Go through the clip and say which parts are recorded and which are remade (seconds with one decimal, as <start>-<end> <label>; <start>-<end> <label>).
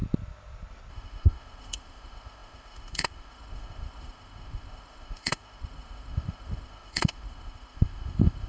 0.0-0.9 recorded; 0.9-8.5 remade